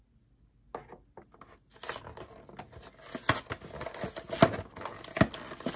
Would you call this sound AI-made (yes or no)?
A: no